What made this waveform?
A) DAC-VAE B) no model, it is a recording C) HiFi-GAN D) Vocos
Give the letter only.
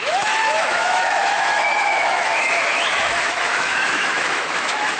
A